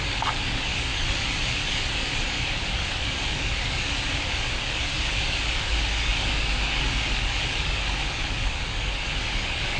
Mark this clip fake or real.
fake